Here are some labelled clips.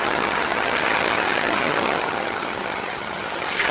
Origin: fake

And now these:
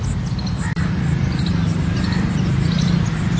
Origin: real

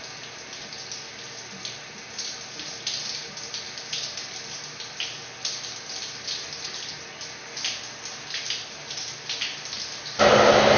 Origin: real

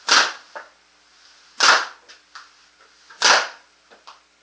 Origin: real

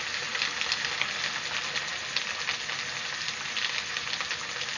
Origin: real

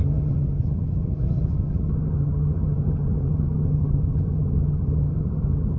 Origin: fake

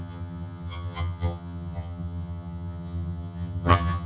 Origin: fake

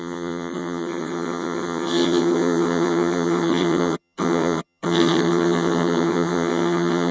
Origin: fake